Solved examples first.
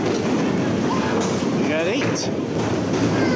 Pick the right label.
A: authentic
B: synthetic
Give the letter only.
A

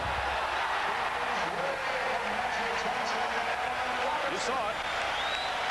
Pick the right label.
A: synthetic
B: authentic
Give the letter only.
B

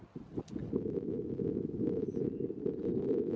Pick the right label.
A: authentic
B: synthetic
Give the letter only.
A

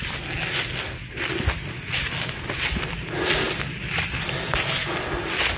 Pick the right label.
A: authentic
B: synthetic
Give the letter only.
A